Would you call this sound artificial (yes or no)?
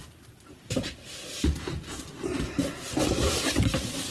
yes